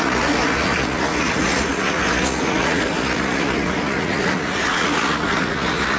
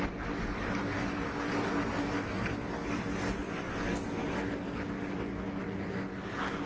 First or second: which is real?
second